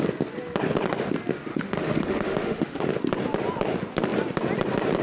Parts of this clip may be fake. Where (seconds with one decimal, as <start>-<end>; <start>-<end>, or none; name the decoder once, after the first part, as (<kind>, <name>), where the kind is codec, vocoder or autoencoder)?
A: 1.5-2.8 (autoencoder, DAC-VAE)